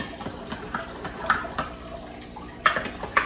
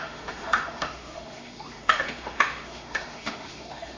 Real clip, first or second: first